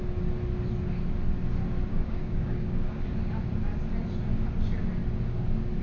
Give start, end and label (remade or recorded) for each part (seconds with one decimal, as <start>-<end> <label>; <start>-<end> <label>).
0.0-1.9 recorded; 1.9-3.0 remade; 3.0-5.8 recorded